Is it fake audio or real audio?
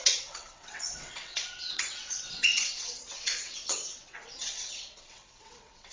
fake